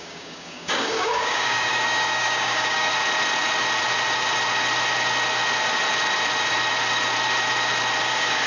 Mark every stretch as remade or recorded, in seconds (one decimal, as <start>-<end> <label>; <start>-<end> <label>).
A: 0.0-2.9 remade; 2.9-8.0 recorded; 8.0-8.5 remade